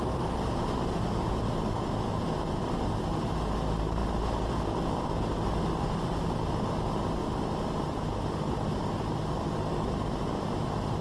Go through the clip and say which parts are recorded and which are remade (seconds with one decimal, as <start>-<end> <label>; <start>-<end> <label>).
0.0-11.0 recorded